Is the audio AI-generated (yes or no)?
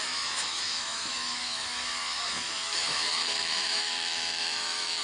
yes